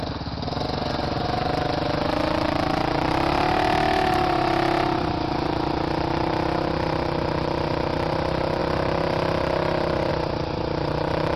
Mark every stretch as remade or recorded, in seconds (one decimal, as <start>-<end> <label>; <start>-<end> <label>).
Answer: 0.0-11.4 recorded